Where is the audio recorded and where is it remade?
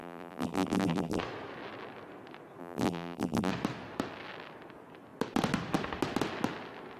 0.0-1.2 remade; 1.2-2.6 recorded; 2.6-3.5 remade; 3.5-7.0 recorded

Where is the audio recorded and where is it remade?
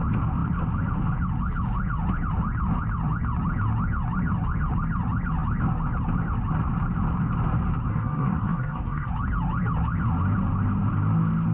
0.0-7.9 recorded; 7.9-9.1 remade; 9.1-11.5 recorded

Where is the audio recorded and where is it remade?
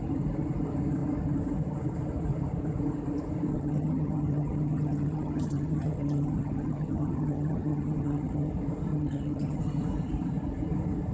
0.0-3.5 recorded; 3.5-8.5 remade; 8.5-8.9 recorded; 8.9-9.6 remade; 9.6-11.1 recorded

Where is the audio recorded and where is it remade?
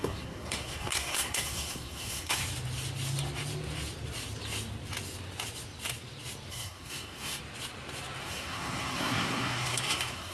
0.0-2.4 remade; 2.4-6.5 recorded; 6.5-7.4 remade; 7.4-8.2 recorded; 8.2-10.3 remade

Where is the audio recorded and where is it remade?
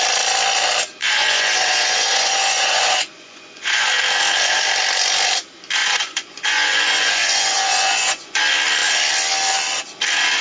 0.0-1.0 recorded; 1.0-4.0 remade; 4.0-5.8 recorded; 5.8-8.4 remade; 8.4-10.4 recorded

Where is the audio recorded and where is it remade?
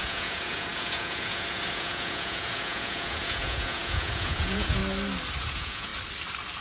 0.0-4.8 remade; 4.8-5.4 recorded; 5.4-5.9 remade; 5.9-6.6 recorded